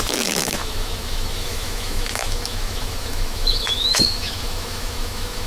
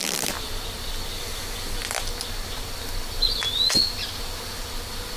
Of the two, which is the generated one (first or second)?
first